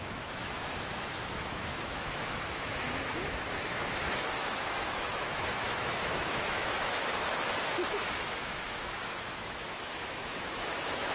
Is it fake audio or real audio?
fake